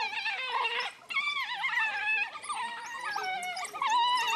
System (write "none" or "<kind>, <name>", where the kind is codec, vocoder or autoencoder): none